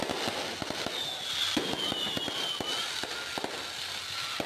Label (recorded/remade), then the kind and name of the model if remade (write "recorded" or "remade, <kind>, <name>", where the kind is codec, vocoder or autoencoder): recorded